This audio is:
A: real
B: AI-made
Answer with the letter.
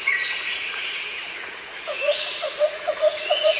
B